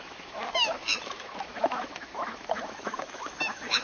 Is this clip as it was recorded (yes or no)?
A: no